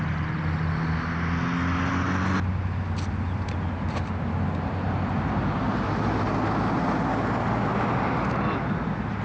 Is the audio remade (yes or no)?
no